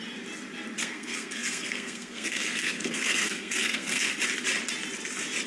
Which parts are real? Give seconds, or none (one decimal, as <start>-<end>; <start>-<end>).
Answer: 0.0-0.8; 4.1-5.5